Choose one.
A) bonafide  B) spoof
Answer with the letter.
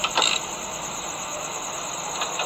A